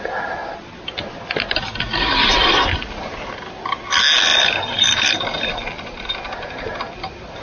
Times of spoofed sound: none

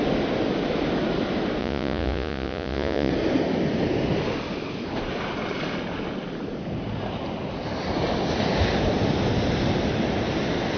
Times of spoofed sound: 1.6-3.1 (vocoder, Vocos)

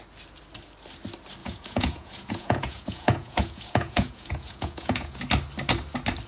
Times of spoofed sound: 1.4-5.2 (vocoder, Vocos)